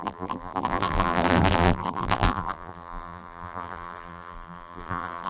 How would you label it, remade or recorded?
remade